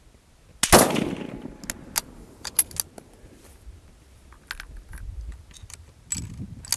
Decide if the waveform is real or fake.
real